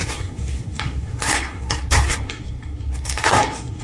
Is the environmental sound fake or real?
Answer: fake